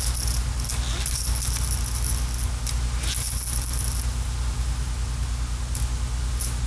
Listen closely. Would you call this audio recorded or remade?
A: recorded